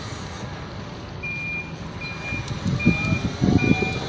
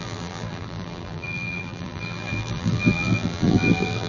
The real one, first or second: first